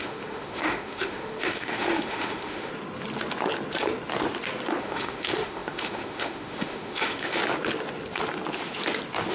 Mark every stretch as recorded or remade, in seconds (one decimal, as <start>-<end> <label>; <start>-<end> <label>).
0.0-2.7 remade; 2.7-4.8 recorded; 4.8-7.4 remade; 7.4-9.3 recorded